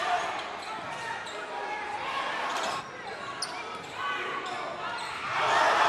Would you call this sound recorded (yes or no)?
yes